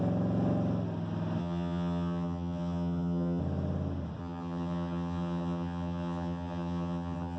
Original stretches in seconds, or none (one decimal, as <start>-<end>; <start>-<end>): 0.0-1.4; 3.4-4.2